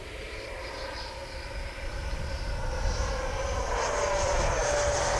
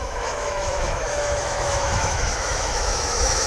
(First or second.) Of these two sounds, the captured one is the first